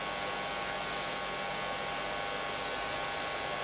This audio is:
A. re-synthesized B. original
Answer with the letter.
B